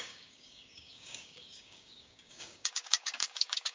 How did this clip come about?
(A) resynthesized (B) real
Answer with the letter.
A